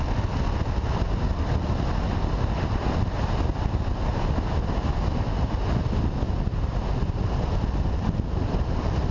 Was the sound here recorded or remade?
recorded